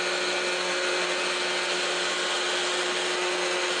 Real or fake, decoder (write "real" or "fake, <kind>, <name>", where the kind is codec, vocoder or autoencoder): real